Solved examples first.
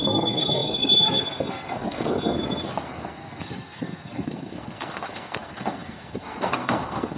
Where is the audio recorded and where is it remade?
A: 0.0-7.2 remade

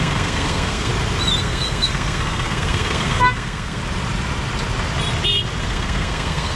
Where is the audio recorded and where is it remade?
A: 0.0-0.9 remade; 0.9-1.4 recorded; 1.4-3.8 remade; 3.8-5.6 recorded; 5.6-6.6 remade

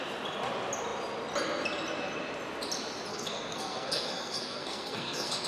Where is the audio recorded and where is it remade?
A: 0.0-3.1 recorded; 3.1-5.5 remade

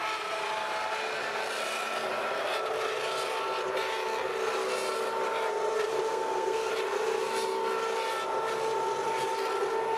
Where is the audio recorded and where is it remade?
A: 0.0-6.1 recorded; 6.1-6.7 remade; 6.7-10.0 recorded